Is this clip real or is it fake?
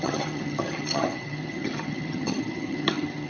fake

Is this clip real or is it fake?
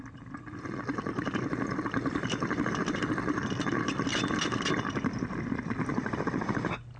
real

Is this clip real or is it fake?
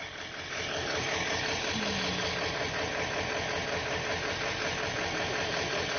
real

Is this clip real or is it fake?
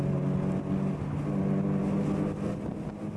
real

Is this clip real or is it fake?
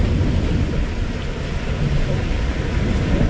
real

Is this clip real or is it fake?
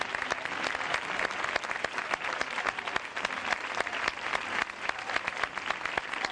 real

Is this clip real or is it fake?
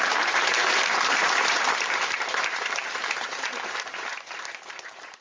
fake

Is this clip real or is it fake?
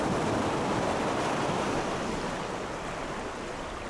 real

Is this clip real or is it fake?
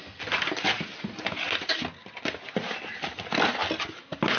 real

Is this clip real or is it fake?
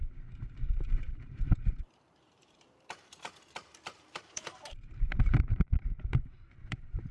fake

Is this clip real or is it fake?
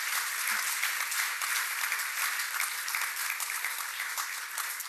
real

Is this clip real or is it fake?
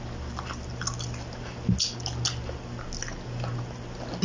real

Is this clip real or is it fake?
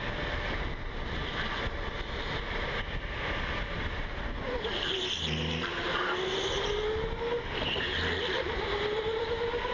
real